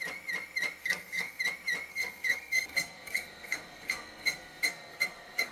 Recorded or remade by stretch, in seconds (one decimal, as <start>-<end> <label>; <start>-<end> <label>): 0.0-0.8 recorded; 0.8-1.4 remade; 1.4-1.9 recorded; 1.9-5.5 remade